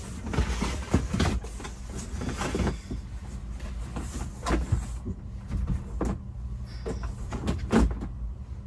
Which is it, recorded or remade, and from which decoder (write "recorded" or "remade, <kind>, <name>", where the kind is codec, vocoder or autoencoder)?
recorded